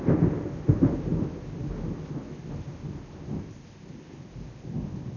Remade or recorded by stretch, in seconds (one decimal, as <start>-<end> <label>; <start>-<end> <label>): 0.0-5.2 recorded